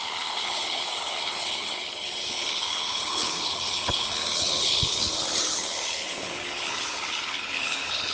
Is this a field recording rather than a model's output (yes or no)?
no